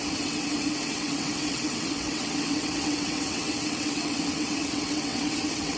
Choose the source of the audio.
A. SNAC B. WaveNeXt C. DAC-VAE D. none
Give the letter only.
B